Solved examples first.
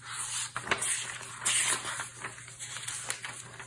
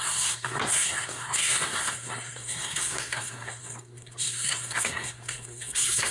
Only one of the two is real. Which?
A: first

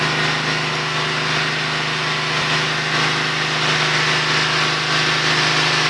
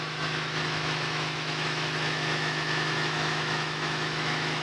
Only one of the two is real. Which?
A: first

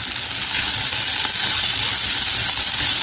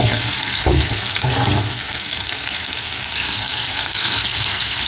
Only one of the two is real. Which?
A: first